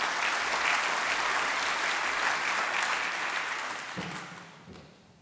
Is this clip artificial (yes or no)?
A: no